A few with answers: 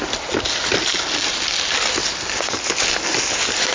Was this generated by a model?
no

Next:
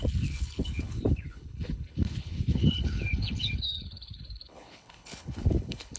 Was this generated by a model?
yes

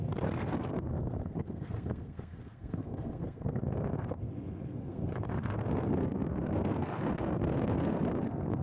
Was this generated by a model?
yes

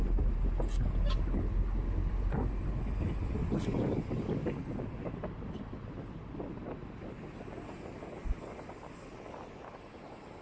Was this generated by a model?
no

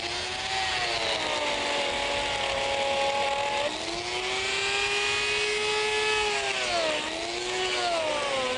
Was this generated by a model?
no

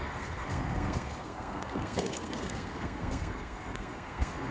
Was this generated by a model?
yes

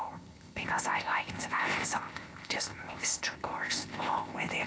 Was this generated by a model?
yes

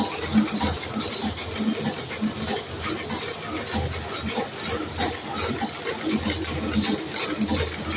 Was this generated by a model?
no